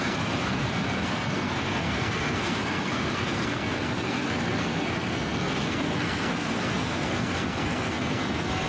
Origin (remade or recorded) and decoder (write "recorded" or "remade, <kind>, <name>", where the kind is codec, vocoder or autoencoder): remade, codec, SNAC